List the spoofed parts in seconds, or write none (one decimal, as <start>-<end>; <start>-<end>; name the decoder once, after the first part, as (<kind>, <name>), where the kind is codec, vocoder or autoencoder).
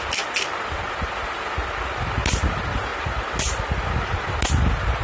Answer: none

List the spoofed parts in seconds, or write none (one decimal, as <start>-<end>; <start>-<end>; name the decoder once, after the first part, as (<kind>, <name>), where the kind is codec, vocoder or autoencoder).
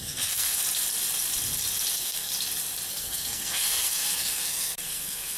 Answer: 0.0-0.6 (codec, SNAC); 1.9-2.3; 2.9-5.4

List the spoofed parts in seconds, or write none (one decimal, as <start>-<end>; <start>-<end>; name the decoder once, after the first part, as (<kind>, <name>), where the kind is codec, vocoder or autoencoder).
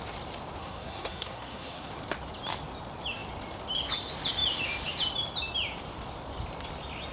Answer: 0.6-1.9 (codec, SNAC)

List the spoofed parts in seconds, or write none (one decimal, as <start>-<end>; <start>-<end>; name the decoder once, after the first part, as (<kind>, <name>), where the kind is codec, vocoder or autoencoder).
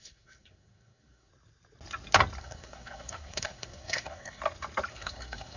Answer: 0.0-1.3 (codec, SNAC); 2.4-4.4; 4.9-5.6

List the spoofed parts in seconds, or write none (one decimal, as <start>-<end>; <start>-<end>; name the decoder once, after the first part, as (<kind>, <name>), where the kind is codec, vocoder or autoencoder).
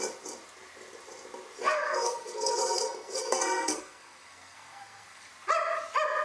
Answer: 1.6-5.3 (codec, SNAC)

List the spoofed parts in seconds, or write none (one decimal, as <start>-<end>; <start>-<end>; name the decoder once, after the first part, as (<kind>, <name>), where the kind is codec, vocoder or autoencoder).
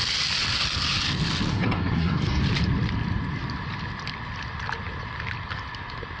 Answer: 1.5-2.4 (codec, SNAC)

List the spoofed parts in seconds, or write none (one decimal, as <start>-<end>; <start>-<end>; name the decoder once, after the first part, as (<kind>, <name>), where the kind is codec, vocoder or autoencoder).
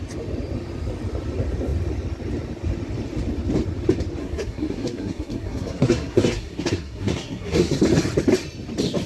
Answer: 4.2-7.8 (codec, SNAC)